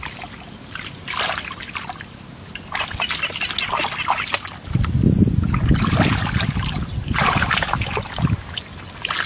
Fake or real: real